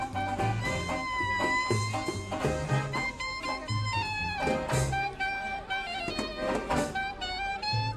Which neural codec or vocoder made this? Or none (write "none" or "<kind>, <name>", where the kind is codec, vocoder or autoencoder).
none